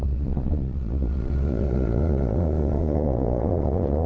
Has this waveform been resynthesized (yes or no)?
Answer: yes